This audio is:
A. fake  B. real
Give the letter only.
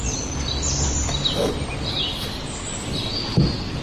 B